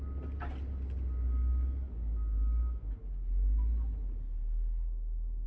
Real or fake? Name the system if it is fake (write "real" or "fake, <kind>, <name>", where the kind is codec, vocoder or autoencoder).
real